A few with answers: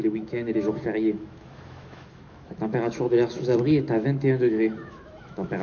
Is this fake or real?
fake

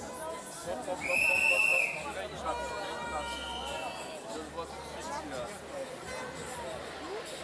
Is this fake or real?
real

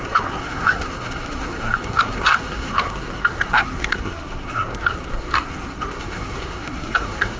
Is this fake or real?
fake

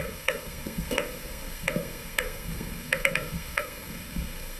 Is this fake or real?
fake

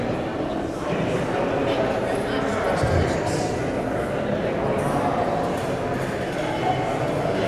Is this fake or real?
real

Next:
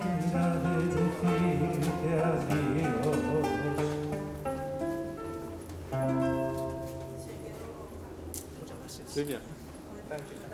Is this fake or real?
real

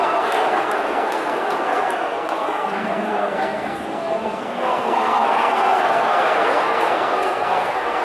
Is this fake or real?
fake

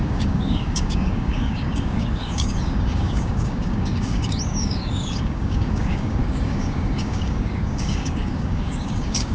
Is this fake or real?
fake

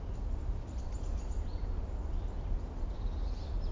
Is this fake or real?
real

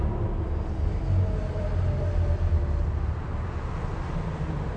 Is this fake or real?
real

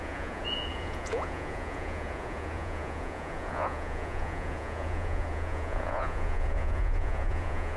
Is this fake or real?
fake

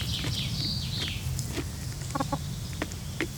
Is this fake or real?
real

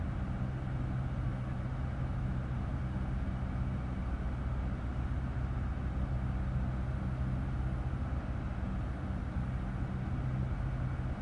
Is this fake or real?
real